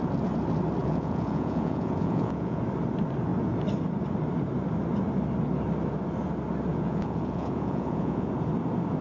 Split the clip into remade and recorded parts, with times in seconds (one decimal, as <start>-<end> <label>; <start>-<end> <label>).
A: 0.0-0.8 recorded; 0.8-2.6 remade; 2.6-6.7 recorded; 6.7-8.3 remade; 8.3-9.0 recorded